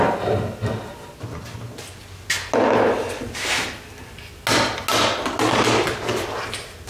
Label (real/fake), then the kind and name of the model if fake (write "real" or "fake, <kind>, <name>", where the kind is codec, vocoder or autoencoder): real